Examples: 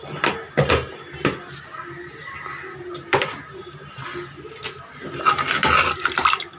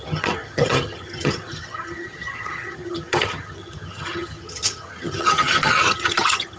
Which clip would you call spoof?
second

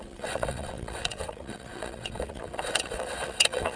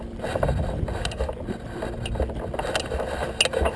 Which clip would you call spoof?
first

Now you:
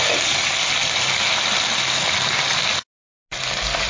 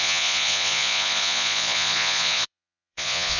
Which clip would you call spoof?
second